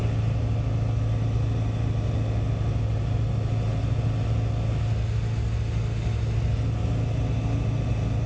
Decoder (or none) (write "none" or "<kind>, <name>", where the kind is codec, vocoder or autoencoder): none